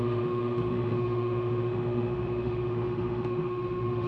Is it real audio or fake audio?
fake